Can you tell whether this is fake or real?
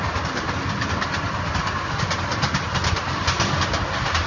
real